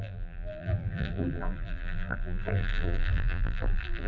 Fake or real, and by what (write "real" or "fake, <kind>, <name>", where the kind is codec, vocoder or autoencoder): fake, vocoder, BigVGAN v2